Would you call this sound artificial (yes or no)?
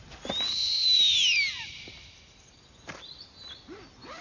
no